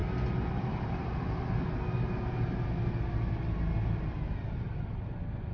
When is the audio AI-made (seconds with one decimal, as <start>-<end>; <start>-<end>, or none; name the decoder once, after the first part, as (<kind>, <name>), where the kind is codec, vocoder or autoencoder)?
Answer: none